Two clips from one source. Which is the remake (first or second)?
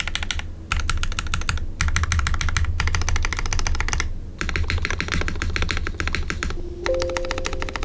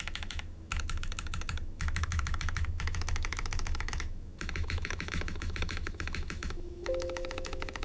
second